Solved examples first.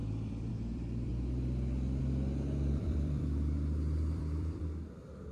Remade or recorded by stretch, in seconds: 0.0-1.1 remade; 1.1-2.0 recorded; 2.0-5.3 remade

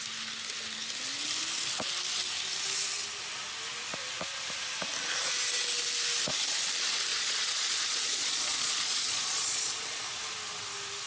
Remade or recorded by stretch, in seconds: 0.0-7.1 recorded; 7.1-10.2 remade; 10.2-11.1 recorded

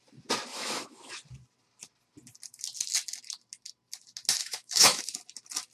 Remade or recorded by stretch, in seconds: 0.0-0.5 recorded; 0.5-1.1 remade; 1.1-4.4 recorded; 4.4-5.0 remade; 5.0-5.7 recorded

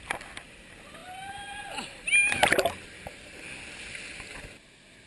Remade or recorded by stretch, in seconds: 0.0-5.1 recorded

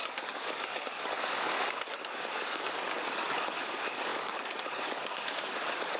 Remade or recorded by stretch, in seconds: 0.0-6.0 remade

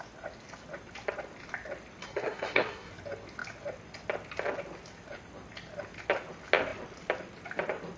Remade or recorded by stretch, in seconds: 0.0-2.0 recorded; 2.0-2.9 remade; 2.9-8.0 recorded

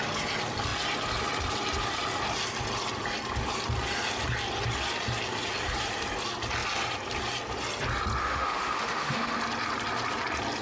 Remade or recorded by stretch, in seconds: 0.0-8.2 recorded; 8.2-9.4 remade; 9.4-10.6 recorded

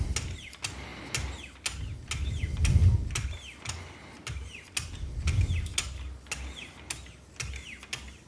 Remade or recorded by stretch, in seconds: 0.0-8.3 recorded